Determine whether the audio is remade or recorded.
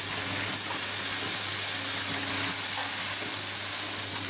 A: recorded